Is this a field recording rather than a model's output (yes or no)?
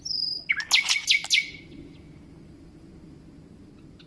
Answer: yes